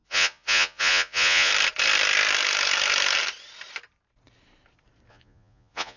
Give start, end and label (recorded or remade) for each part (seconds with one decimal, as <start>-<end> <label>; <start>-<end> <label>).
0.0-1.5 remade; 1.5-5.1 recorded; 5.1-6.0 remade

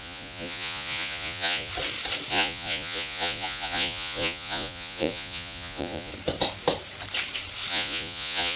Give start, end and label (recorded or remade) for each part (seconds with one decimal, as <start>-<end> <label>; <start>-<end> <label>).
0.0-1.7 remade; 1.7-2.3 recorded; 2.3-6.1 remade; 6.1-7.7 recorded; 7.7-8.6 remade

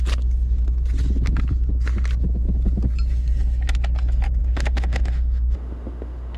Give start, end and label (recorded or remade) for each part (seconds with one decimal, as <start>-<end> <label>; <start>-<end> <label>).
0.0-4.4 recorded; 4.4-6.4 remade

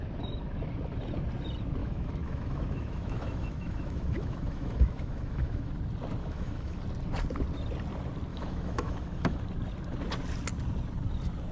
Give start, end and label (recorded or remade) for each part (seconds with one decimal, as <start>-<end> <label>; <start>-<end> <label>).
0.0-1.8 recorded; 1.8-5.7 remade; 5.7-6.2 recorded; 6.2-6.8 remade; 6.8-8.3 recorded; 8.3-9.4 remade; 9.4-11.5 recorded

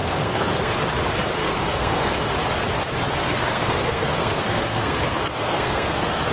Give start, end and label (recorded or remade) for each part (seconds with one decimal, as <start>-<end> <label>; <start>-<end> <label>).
0.0-0.7 remade; 0.7-1.4 recorded; 1.4-2.1 remade; 2.1-3.2 recorded; 3.2-6.3 remade